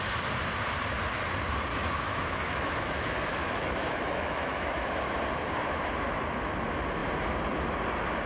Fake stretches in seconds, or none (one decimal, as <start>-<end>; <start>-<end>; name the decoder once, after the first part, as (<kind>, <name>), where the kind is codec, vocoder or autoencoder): 1.7-4.9 (autoencoder, DAC-VAE)